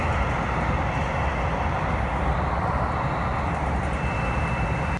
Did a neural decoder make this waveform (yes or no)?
no